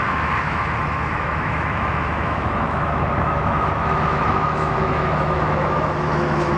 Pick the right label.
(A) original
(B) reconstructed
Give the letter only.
B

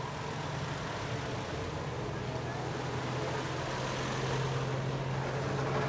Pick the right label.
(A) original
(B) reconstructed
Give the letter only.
A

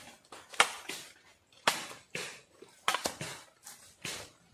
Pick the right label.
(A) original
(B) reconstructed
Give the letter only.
A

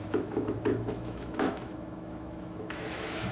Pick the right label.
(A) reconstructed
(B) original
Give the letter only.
A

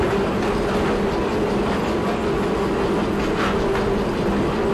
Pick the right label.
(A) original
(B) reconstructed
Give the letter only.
A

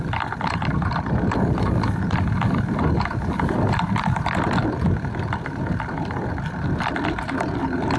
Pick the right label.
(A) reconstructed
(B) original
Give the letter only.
B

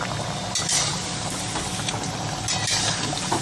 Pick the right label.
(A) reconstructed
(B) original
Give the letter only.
B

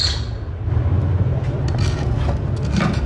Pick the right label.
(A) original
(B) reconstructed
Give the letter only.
A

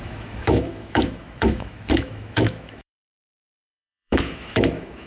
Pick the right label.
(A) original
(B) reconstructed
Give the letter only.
B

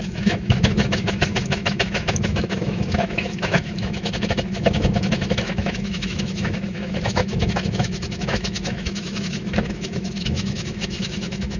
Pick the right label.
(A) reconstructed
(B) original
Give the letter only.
A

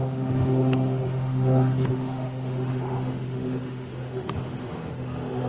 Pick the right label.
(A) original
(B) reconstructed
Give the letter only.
B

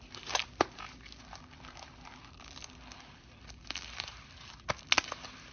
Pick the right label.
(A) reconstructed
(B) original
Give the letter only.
B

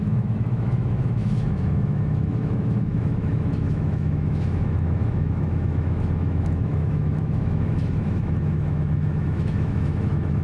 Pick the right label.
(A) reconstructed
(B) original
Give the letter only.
A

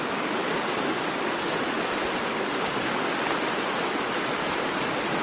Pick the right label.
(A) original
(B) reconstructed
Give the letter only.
A